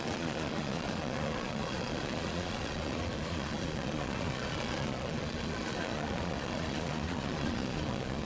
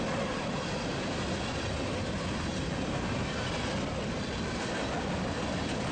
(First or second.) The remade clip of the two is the first